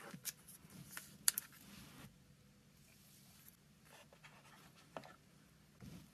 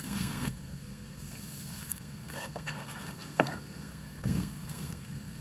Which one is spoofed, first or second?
second